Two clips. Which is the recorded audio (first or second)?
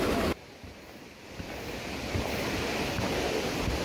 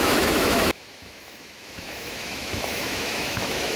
first